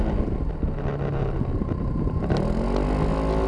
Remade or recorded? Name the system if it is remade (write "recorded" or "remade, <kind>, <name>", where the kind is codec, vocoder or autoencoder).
recorded